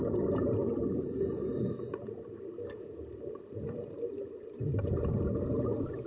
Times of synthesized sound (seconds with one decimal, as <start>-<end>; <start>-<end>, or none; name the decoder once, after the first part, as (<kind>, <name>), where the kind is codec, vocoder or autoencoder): 0.6-4.3 (vocoder, BigVGAN v2)